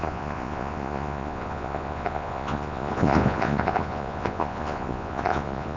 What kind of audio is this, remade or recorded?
remade